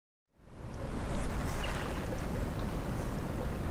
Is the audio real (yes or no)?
yes